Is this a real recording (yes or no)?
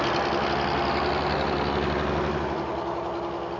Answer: yes